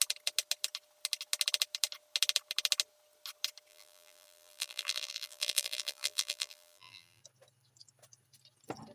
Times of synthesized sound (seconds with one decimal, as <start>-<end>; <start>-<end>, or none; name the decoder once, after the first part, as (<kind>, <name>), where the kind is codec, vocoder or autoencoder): 3.7-7.2 (vocoder, BigVGAN v2)